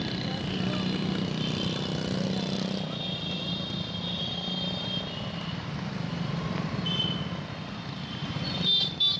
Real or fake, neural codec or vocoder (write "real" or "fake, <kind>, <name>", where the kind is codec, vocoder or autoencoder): real